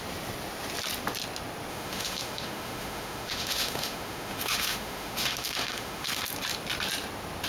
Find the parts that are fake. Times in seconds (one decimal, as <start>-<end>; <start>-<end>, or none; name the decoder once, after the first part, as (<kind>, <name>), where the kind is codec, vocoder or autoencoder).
1.7-6.2 (autoencoder, DAC-VAE)